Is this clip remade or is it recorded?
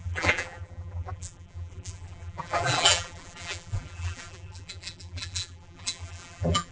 remade